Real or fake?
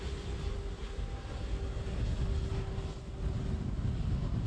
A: real